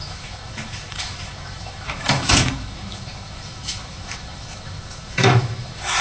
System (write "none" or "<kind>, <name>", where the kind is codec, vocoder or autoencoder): autoencoder, DAC-VAE